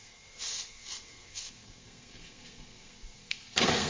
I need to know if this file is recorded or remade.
remade